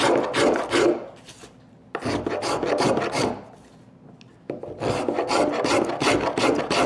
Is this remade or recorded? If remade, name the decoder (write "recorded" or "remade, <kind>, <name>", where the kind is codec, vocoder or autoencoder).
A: recorded